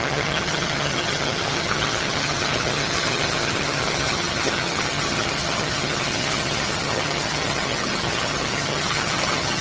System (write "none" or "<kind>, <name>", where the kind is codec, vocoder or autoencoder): vocoder, HiFi-GAN